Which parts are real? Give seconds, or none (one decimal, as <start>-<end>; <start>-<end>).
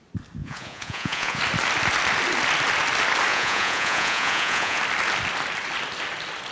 0.0-0.4; 1.4-3.3; 4.8-6.5